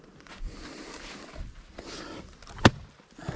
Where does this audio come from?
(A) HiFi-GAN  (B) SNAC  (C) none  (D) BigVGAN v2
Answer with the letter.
C